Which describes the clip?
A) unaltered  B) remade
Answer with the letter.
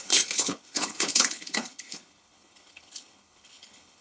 B